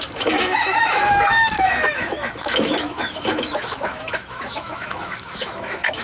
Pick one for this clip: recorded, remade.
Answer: remade